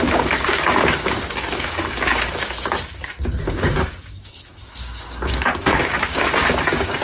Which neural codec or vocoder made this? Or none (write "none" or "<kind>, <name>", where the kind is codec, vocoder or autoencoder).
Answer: codec, DAC